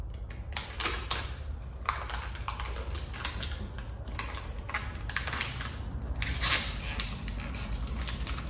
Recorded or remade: recorded